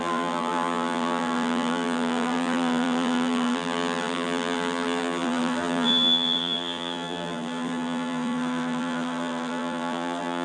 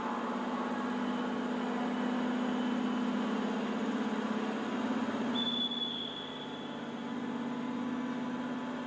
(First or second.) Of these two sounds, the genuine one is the second